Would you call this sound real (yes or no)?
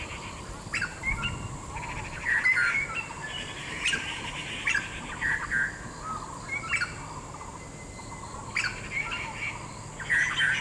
yes